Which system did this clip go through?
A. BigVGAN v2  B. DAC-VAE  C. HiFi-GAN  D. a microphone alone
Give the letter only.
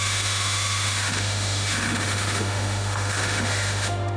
B